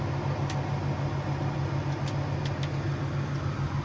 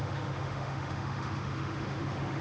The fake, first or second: second